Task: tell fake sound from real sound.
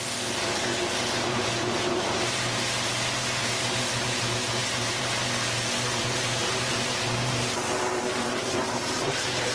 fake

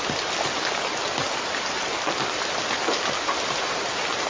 fake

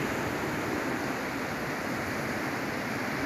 real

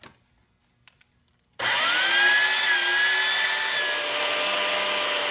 real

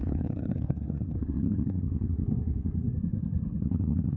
fake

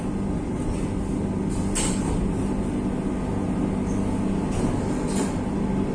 real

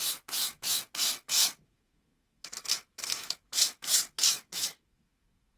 fake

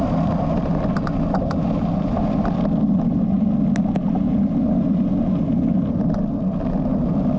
real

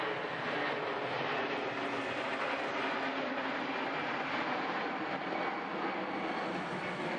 real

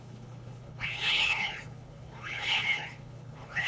fake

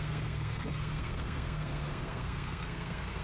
fake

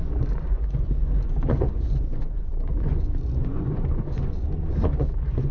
fake